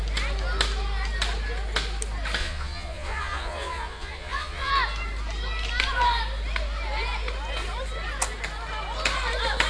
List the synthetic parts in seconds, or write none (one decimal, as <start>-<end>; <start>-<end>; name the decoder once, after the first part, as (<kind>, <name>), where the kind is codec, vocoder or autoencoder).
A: 2.4-4.7 (vocoder, Vocos)